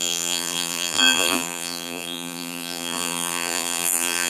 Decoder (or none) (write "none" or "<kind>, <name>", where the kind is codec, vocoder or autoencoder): vocoder, BigVGAN v2